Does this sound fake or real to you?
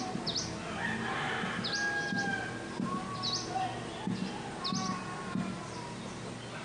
real